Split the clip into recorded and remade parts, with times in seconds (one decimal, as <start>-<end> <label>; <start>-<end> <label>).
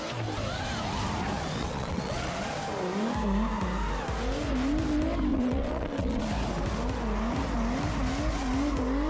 0.0-1.6 recorded; 1.6-2.3 remade; 2.3-5.3 recorded; 5.3-6.2 remade; 6.2-9.1 recorded